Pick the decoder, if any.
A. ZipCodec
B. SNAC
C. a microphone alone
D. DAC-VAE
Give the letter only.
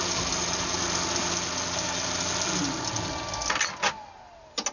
C